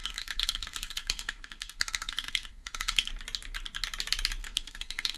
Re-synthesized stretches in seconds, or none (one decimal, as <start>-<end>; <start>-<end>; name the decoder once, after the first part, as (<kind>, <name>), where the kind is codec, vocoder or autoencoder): 0.0-3.1 (codec, SNAC); 4.4-5.2